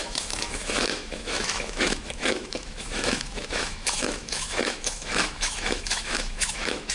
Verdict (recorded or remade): remade